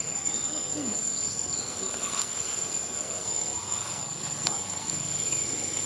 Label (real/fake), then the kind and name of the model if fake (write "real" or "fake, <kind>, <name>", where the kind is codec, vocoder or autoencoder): fake, codec, SNAC